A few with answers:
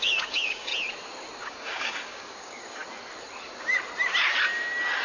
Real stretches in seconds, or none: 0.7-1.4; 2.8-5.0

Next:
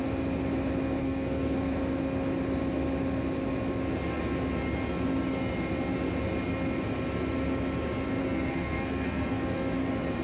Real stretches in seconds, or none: 0.0-1.0; 1.8-8.2; 9.4-10.2

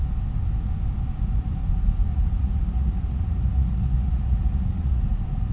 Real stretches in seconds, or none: 0.0-2.1; 5.0-5.5